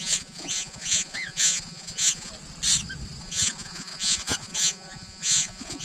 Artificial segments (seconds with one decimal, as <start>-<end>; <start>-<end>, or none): 0.0-2.3; 3.2-5.8